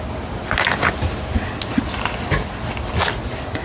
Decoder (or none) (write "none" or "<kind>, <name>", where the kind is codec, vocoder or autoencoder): none